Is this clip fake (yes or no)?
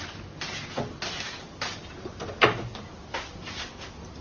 no